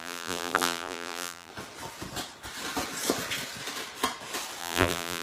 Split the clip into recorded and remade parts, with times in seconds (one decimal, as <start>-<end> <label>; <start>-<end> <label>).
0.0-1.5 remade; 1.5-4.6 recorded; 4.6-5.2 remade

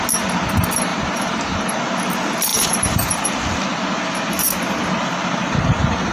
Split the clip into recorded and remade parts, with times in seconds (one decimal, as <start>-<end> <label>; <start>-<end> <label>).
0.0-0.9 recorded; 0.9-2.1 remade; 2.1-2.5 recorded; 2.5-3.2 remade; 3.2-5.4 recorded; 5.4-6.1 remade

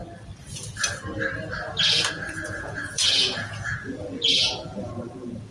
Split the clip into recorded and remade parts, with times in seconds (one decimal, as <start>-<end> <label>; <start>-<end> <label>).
0.0-2.1 recorded; 2.1-5.5 remade

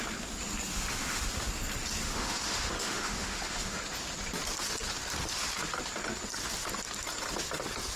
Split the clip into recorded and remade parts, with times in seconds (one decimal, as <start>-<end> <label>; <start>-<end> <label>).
0.0-0.7 recorded; 0.7-1.5 remade; 1.5-2.0 recorded; 2.0-3.8 remade; 3.8-8.0 recorded

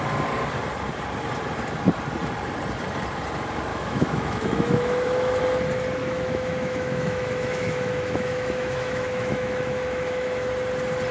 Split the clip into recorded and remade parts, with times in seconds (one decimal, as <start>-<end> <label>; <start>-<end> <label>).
0.0-3.7 recorded; 3.7-5.4 remade; 5.4-6.0 recorded; 6.0-10.5 remade; 10.5-11.1 recorded